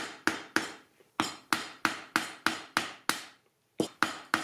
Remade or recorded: recorded